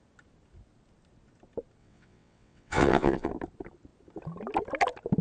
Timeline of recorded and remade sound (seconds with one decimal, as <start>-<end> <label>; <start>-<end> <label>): 0.0-1.8 recorded; 1.8-3.3 remade; 3.3-5.2 recorded